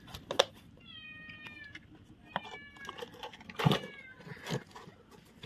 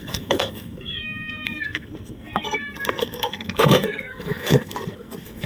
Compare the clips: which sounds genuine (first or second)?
first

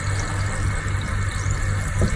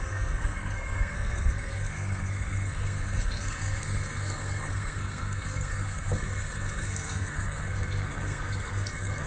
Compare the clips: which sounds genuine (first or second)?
first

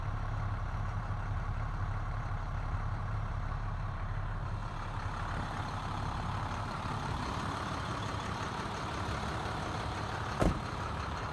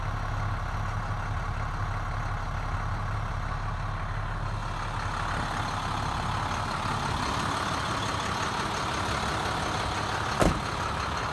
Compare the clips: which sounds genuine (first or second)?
second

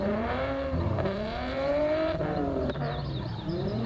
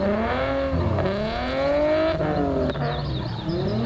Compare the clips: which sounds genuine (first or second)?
second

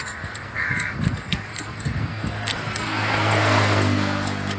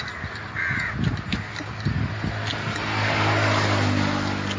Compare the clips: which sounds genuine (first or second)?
second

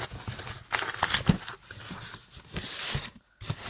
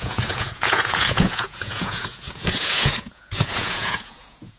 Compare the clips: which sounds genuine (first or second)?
first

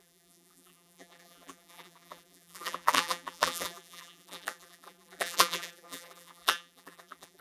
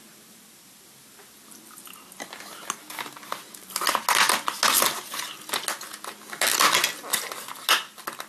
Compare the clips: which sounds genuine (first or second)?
second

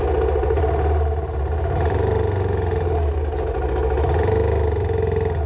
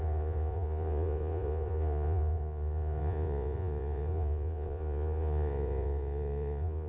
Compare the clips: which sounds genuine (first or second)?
first